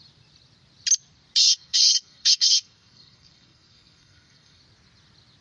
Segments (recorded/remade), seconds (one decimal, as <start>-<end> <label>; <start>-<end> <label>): 0.0-1.4 recorded; 1.4-4.6 remade; 4.6-5.4 recorded

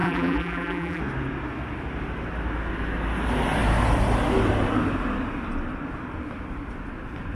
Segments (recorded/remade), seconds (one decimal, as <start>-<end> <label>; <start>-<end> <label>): 0.0-1.0 remade; 1.0-7.3 recorded

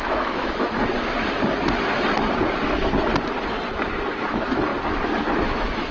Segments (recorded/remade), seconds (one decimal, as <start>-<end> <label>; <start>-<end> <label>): 0.0-0.8 remade; 0.8-4.3 recorded; 4.3-4.7 remade; 4.7-5.3 recorded; 5.3-5.9 remade

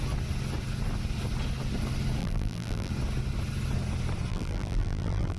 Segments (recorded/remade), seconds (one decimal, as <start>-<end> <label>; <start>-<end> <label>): 0.0-2.2 recorded; 2.2-2.9 remade; 2.9-4.3 recorded; 4.3-5.4 remade

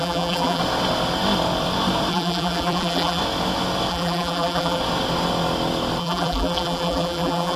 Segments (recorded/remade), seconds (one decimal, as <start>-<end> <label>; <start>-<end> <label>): 0.0-0.6 remade; 0.6-2.1 recorded; 2.1-3.2 remade; 3.2-3.9 recorded; 3.9-4.8 remade; 4.8-6.0 recorded; 6.0-7.6 remade